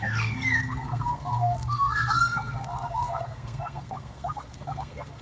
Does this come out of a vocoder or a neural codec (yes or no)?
yes